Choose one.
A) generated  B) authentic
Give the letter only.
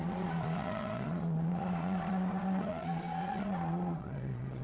A